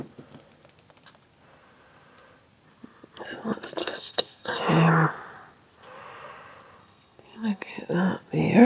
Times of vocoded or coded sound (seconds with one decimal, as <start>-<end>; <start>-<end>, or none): 3.8-4.6; 6.8-7.7